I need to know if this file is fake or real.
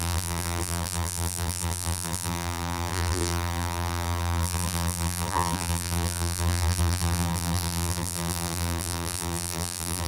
fake